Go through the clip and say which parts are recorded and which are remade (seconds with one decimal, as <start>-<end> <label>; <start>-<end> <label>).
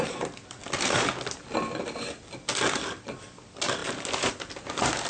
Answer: 0.0-5.1 recorded